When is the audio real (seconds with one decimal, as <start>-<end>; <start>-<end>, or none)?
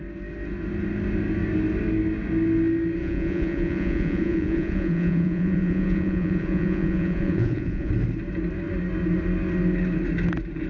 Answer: 0.0-3.0; 7.9-10.7